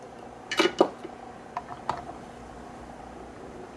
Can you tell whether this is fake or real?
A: real